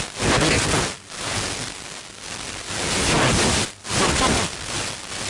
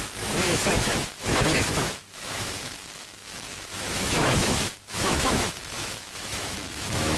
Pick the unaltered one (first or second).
first